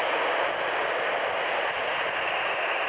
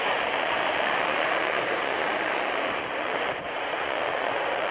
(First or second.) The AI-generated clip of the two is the second